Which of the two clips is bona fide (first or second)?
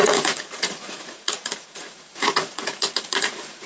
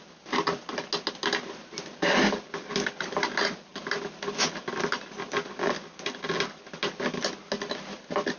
second